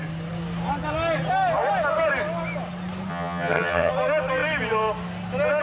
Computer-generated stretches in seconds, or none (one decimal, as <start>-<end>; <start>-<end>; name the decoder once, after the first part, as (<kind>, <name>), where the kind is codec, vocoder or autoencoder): 3.1-3.9 (vocoder, HiFi-GAN)